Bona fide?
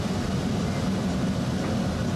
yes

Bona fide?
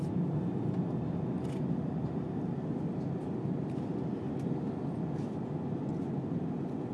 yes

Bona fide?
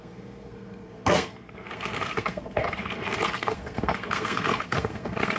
no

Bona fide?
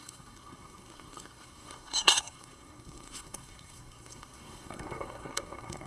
no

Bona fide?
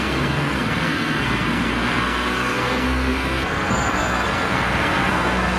no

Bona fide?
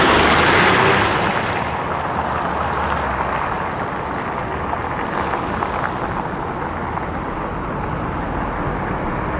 yes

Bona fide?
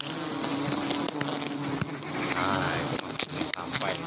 yes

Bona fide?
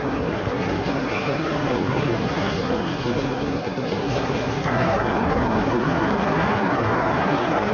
no